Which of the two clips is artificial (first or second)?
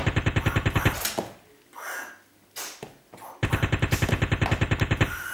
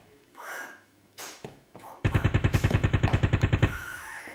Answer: second